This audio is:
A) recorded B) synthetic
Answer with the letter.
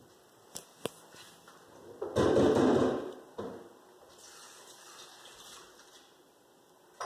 A